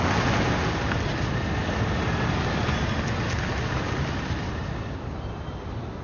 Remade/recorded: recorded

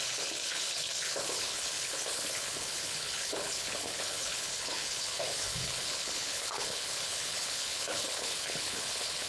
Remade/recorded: remade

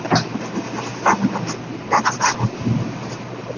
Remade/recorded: recorded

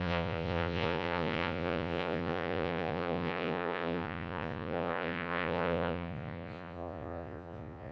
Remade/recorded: remade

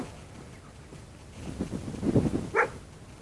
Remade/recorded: recorded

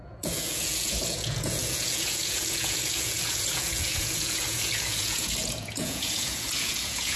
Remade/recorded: remade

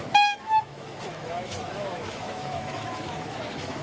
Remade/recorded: remade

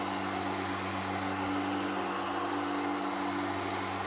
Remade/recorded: recorded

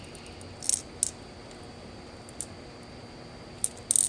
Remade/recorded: recorded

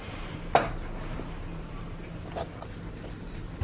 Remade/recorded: recorded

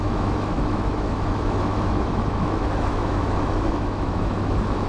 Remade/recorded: remade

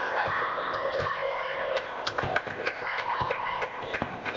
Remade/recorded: remade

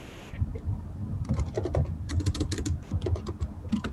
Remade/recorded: recorded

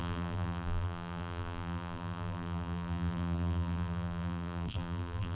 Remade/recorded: remade